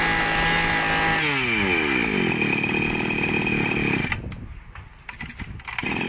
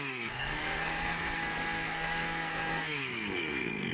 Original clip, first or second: first